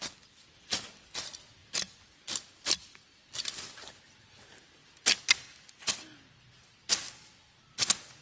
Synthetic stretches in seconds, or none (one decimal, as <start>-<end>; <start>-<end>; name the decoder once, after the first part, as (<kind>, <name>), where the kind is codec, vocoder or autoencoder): none